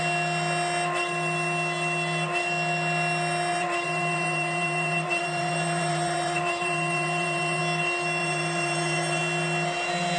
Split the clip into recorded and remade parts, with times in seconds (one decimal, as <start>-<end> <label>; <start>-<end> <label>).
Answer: 0.0-3.5 recorded; 3.5-7.6 remade; 7.6-8.2 recorded; 8.2-9.2 remade; 9.2-10.2 recorded